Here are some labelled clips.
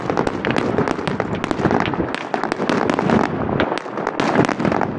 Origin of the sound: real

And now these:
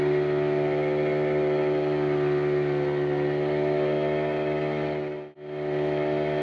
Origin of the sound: real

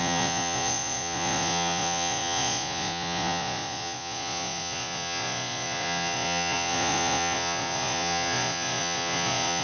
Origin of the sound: fake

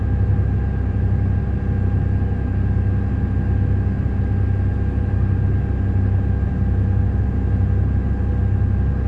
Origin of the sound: real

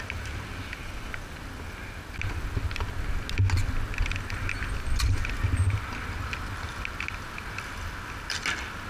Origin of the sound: real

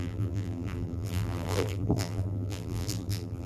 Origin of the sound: fake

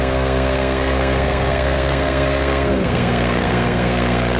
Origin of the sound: fake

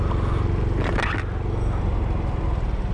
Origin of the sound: real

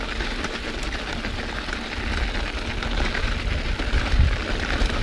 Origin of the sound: real